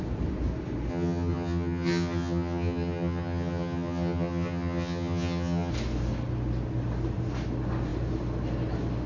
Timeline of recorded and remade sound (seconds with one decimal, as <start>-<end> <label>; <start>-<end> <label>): 0.0-0.9 recorded; 0.9-5.7 remade; 5.7-9.1 recorded